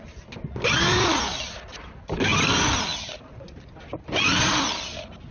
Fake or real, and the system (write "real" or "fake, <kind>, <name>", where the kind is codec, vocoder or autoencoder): real